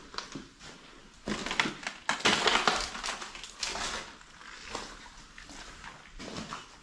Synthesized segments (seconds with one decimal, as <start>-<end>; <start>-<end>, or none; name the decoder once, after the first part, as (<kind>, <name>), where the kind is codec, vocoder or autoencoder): none